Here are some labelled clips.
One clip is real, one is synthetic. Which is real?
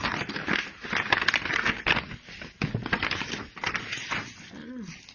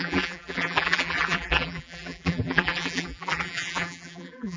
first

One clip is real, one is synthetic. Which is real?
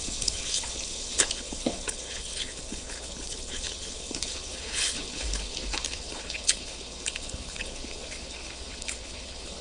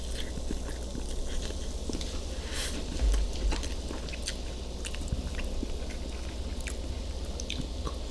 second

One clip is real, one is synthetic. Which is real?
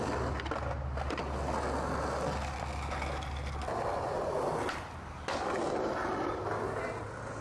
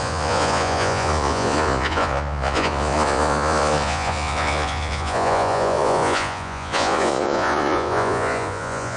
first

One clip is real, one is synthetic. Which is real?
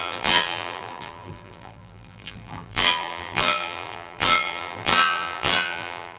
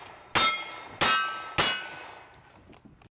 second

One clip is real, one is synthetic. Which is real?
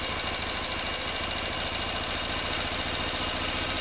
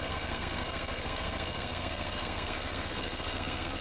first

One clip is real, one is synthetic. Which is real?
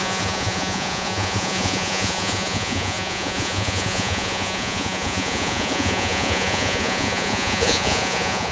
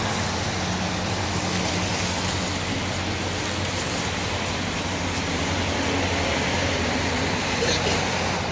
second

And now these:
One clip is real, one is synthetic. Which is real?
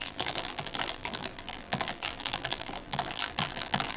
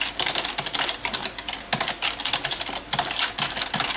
second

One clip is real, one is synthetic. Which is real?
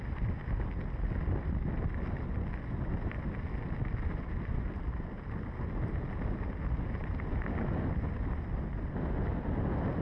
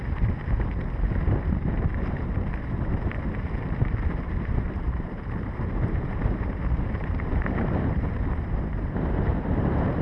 first